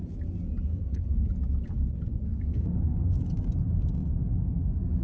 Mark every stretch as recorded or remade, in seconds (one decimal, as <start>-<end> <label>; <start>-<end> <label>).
0.0-0.7 recorded; 0.7-1.3 remade; 1.3-2.3 recorded; 2.3-3.1 remade; 3.1-5.0 recorded